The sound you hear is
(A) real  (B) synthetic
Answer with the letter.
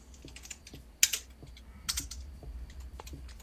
A